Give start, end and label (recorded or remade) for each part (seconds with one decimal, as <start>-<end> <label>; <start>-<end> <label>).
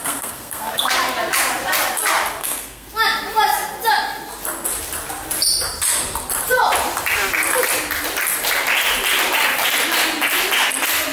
0.0-0.9 remade; 0.9-2.4 recorded; 2.4-2.9 remade; 2.9-11.1 recorded